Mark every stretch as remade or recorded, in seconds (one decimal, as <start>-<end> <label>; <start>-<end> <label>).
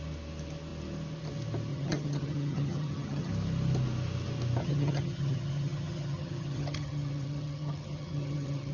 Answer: 0.0-1.7 recorded; 1.7-3.3 remade; 3.3-4.6 recorded; 4.6-8.7 remade